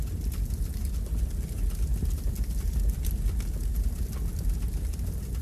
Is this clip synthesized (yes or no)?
no